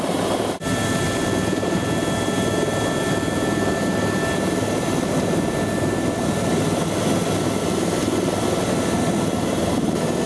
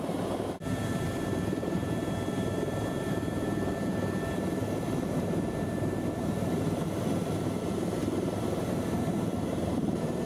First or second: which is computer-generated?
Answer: second